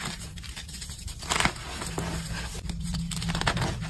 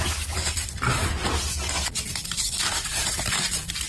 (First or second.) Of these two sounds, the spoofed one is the second